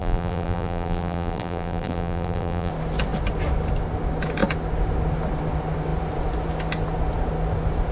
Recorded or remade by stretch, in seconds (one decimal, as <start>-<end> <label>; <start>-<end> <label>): 0.0-2.7 remade; 2.7-7.9 recorded

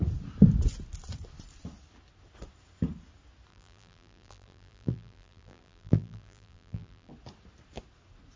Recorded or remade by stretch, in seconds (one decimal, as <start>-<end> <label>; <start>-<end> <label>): 0.0-3.5 recorded; 3.5-7.1 remade; 7.1-8.4 recorded

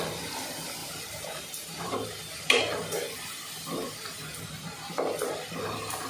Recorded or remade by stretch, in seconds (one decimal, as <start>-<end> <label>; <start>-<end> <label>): 0.0-0.8 recorded; 0.8-2.6 remade; 2.6-6.1 recorded

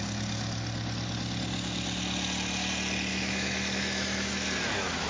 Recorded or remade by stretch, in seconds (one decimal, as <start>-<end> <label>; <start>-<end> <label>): 0.0-3.1 recorded; 3.1-4.3 remade; 4.3-5.1 recorded

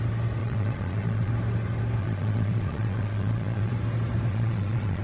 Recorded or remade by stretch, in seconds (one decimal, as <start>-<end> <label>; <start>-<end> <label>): 0.0-0.4 recorded; 0.4-1.3 remade; 1.3-2.0 recorded; 2.0-3.7 remade; 3.7-4.3 recorded; 4.3-5.0 remade

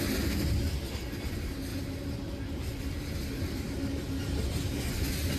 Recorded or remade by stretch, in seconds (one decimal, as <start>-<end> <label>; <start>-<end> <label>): 0.0-5.4 recorded